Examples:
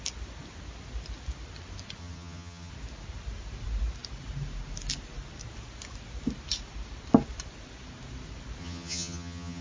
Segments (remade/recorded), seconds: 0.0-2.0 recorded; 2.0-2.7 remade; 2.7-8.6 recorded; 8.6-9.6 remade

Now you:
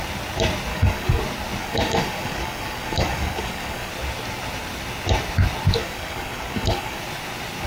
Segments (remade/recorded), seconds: 0.0-0.7 recorded; 0.7-1.2 remade; 1.2-1.6 recorded; 1.6-3.9 remade; 3.9-5.8 recorded; 5.8-7.0 remade; 7.0-7.7 recorded

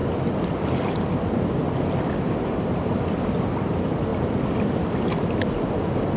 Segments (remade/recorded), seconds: 0.0-6.2 recorded

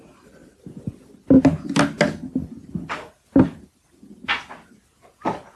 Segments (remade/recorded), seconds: 0.0-5.6 recorded

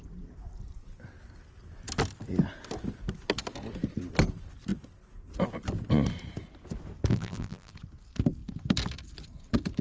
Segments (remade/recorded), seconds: 0.0-7.1 recorded; 7.1-7.7 remade; 7.7-9.8 recorded

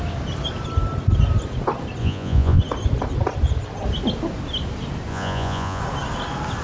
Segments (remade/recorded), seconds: 0.0-2.0 recorded; 2.0-2.6 remade; 2.6-5.1 recorded; 5.1-5.8 remade; 5.8-6.6 recorded

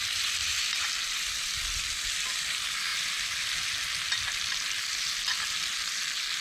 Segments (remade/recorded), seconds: 0.0-0.4 recorded; 0.4-1.4 remade; 1.4-2.9 recorded; 2.9-4.2 remade; 4.2-6.4 recorded